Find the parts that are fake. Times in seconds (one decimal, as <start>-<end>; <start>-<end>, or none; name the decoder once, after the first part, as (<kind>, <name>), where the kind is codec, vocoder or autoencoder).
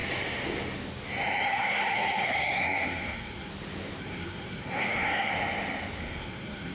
1.5-3.5 (codec, SNAC); 4.0-5.3; 6.0-6.7